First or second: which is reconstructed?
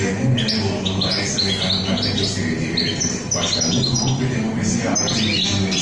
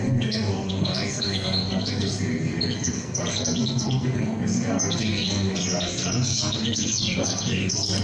second